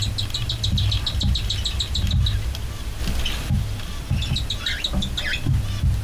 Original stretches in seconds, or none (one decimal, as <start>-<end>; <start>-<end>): 0.0-6.0